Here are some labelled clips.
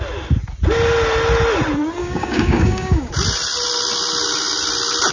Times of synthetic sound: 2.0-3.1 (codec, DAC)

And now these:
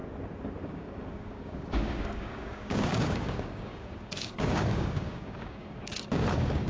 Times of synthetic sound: 0.6-6.7 (codec, DAC)

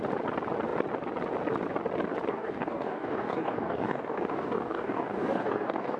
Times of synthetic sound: 2.3-6.0 (codec, DAC)

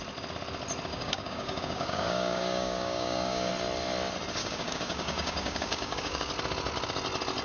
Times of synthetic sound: 0.9-3.5 (codec, DAC); 4.4-6.3

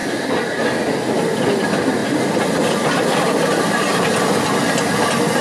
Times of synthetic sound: none

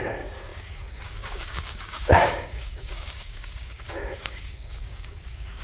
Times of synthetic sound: 0.0-5.6 (codec, DAC)